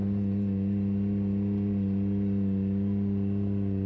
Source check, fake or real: real